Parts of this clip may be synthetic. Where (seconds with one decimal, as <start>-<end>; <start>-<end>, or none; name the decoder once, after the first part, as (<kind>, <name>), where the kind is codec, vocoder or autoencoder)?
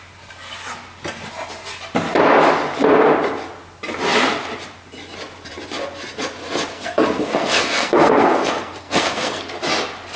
6.7-9.4 (codec, SNAC)